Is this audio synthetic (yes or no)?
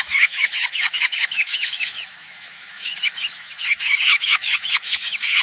yes